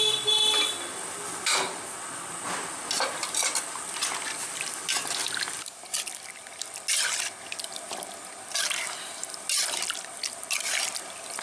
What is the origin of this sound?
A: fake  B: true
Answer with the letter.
B